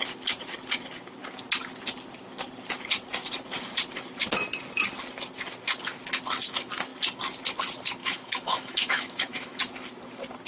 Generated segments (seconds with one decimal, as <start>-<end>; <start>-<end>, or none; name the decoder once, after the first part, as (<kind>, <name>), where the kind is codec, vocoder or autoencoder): 8.0-9.6 (autoencoder, DAC-VAE)